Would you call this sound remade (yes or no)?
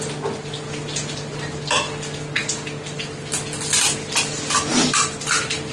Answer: no